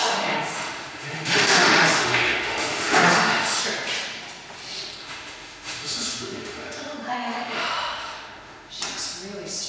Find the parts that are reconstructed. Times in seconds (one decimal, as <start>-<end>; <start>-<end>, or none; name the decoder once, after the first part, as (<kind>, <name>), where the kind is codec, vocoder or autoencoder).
0.0-3.6 (autoencoder, DAC-VAE); 5.0-8.7